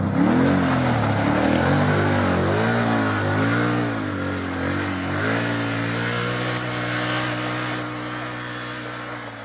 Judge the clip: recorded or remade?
recorded